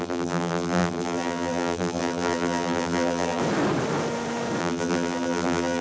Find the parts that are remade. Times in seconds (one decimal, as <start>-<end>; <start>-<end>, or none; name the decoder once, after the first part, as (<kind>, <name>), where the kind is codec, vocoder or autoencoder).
0.0-3.4 (vocoder, BigVGAN v2); 4.6-5.8